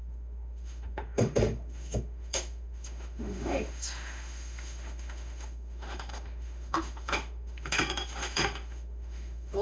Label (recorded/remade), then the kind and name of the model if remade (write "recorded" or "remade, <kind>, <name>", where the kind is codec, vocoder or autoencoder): remade, autoencoder, DAC-VAE